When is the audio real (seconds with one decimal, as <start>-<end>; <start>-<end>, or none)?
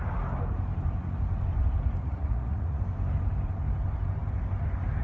0.0-2.0; 2.8-5.0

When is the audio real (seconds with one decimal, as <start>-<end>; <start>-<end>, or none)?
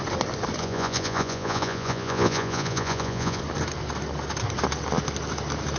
0.0-0.6; 3.4-5.8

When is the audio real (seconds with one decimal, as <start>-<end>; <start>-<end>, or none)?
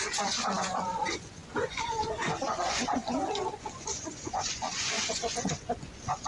none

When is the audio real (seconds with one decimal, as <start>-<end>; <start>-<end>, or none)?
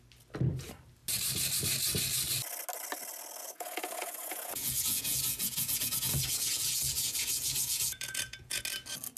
0.0-3.4; 8.6-9.2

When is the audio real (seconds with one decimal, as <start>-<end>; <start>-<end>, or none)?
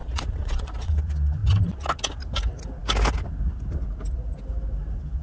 0.9-5.2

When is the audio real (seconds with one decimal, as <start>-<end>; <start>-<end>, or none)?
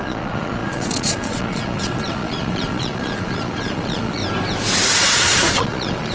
4.2-5.0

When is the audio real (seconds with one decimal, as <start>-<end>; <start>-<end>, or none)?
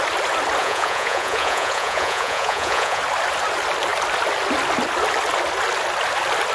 0.0-0.6; 3.0-6.5